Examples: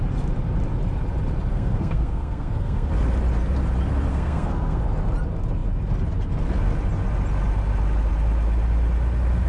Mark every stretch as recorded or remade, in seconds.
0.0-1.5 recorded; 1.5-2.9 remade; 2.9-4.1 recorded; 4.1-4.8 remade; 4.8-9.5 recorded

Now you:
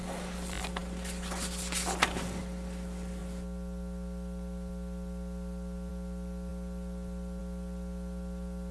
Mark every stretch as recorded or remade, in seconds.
0.0-8.7 recorded

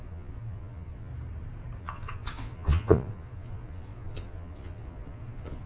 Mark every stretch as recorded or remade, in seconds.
0.0-1.1 remade; 1.1-1.8 recorded; 1.8-5.7 remade

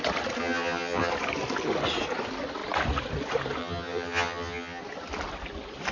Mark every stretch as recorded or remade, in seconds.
0.0-0.4 recorded; 0.4-1.1 remade; 1.1-3.6 recorded; 3.6-4.8 remade; 4.8-5.9 recorded

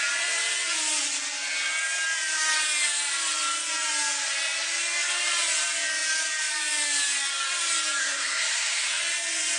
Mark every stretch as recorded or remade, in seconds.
0.0-8.0 recorded; 8.0-8.9 remade; 8.9-9.6 recorded

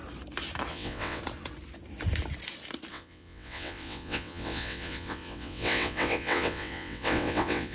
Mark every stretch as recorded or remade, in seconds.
0.0-0.7 recorded; 0.7-1.2 remade; 1.2-2.9 recorded; 2.9-7.7 remade

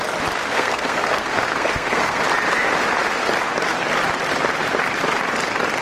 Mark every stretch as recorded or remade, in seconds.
0.0-0.4 recorded; 0.4-2.2 remade; 2.2-5.8 recorded

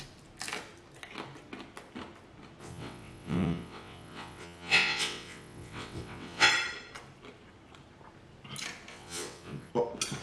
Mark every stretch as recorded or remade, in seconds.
0.0-2.6 recorded; 2.6-6.5 remade; 6.5-8.9 recorded; 8.9-9.7 remade; 9.7-10.2 recorded